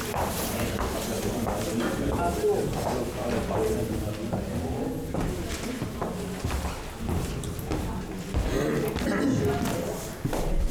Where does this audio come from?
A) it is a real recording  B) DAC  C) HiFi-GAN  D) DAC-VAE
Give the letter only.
A